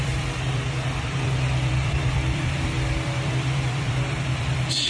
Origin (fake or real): fake